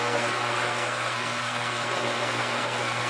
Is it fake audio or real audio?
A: fake